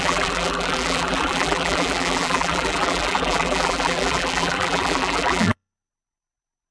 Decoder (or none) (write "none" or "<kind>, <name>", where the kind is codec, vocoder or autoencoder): vocoder, BigVGAN v2